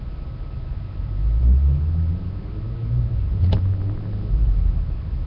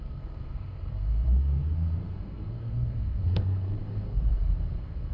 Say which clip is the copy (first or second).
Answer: second